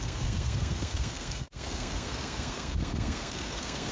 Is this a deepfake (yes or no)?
yes